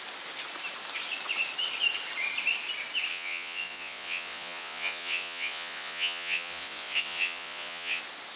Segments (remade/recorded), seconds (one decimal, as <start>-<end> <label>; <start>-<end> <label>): 0.0-3.1 recorded; 3.1-8.0 remade; 8.0-8.4 recorded

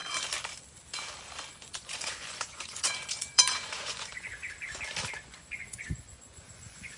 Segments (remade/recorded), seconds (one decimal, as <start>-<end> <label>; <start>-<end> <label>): 0.0-1.5 recorded; 1.5-4.3 remade; 4.3-5.2 recorded; 5.2-7.0 remade

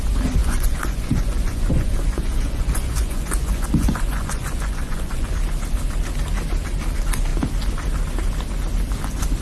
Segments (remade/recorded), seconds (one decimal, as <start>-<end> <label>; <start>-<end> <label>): 0.0-0.4 recorded; 0.4-5.3 remade; 5.3-9.4 recorded

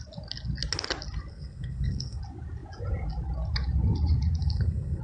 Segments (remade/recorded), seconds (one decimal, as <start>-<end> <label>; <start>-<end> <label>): 0.0-1.3 recorded; 1.3-2.2 remade; 2.2-4.4 recorded; 4.4-5.0 remade

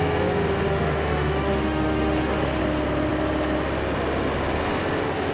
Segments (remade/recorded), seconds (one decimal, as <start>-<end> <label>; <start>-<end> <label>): 0.0-0.7 recorded; 0.7-2.6 remade; 2.6-5.3 recorded

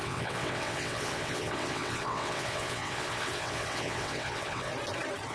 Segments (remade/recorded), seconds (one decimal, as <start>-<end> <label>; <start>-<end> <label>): 0.0-4.7 remade; 4.7-5.3 recorded

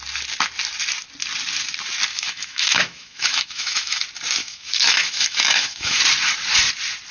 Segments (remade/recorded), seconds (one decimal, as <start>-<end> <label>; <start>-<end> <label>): 0.0-2.1 recorded; 2.1-4.0 remade; 4.0-4.4 recorded; 4.4-6.0 remade; 6.0-7.1 recorded